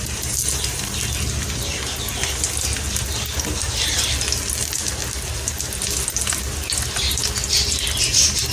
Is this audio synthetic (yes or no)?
no